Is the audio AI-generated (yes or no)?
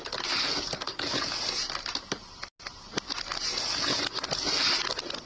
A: no